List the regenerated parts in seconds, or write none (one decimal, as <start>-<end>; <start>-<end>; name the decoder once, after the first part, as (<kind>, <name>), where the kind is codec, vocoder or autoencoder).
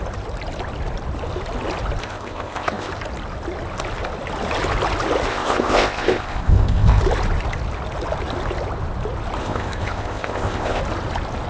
2.0-2.9 (codec, ZipCodec); 5.3-7.0; 9.4-10.8